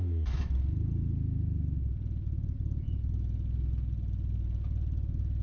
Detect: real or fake real